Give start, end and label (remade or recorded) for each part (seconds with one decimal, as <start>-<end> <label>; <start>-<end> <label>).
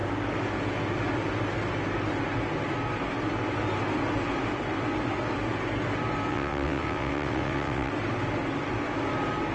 0.0-6.3 recorded; 6.3-7.9 remade; 7.9-9.5 recorded